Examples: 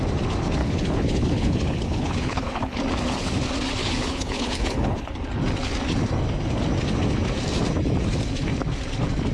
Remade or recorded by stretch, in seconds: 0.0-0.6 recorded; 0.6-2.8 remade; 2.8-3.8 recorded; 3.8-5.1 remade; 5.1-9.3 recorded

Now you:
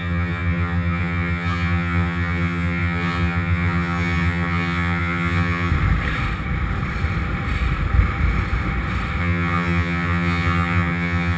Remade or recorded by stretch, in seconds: 0.0-5.7 remade; 5.7-9.2 recorded; 9.2-11.4 remade

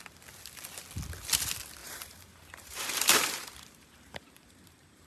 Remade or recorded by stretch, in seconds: 0.0-1.8 recorded; 1.8-5.1 remade